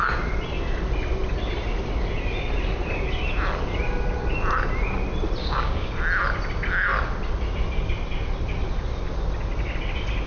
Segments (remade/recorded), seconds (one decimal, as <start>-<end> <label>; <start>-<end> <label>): 0.0-5.4 recorded; 5.4-5.9 remade; 5.9-10.3 recorded